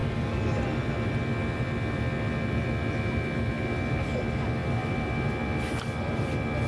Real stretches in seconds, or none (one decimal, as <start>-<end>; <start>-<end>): 0.0-6.7